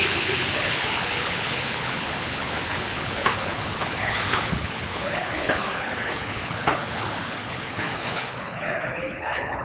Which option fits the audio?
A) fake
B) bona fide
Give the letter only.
A